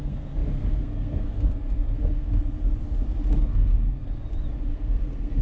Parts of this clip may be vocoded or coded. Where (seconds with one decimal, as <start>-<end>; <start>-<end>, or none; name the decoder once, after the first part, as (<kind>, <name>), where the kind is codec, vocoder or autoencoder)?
0.0-2.3 (codec, SNAC); 3.3-4.2; 4.7-5.4